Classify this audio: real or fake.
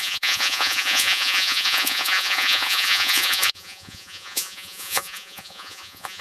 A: fake